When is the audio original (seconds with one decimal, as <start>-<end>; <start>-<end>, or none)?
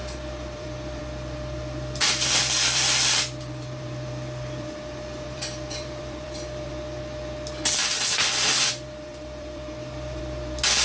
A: 1.0-1.6; 6.7-7.8; 10.2-10.8